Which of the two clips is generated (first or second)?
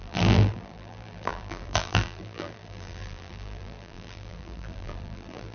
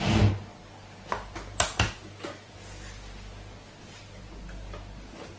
first